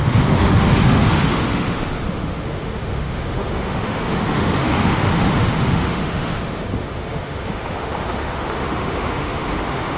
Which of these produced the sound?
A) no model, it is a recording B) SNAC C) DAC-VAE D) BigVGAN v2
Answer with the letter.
C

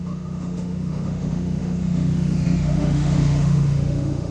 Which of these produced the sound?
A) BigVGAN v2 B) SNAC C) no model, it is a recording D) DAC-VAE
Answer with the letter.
D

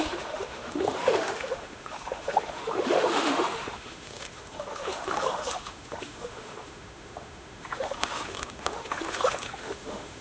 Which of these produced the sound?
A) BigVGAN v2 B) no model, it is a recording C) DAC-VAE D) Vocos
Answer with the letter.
C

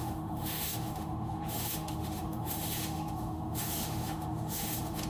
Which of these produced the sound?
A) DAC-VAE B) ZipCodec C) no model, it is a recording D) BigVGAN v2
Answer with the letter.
A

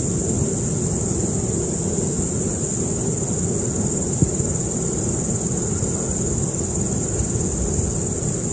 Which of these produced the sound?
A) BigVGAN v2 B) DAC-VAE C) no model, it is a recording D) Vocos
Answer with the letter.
C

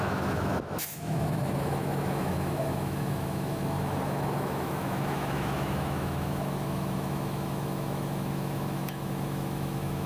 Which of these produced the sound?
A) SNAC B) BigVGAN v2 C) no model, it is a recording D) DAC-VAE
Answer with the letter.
D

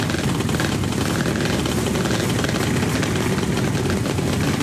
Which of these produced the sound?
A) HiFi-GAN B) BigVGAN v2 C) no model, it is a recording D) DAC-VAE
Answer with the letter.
C